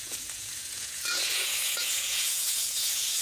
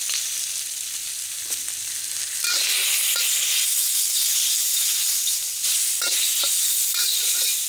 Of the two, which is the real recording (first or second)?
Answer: second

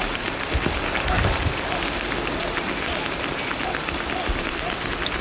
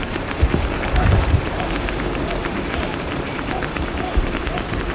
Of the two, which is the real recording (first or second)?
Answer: first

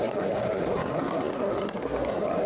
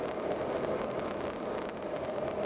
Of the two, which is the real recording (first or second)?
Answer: second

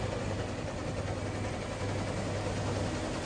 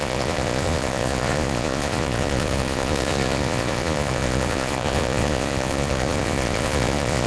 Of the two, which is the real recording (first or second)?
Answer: first